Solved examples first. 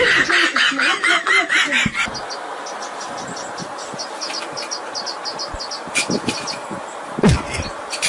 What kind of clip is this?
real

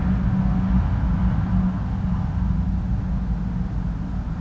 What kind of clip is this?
real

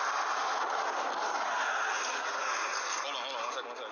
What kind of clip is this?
real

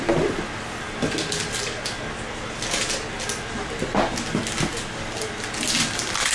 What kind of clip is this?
real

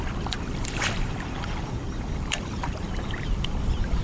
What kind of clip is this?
fake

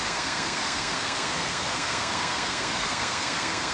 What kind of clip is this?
fake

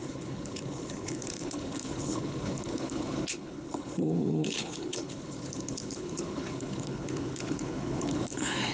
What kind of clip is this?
fake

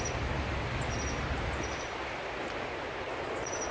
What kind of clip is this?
real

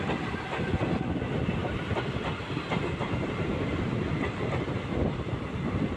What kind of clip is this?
real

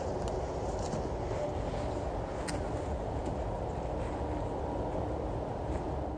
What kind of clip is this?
real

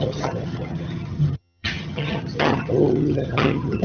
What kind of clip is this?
fake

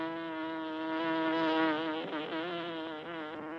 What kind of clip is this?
real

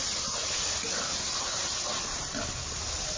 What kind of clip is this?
real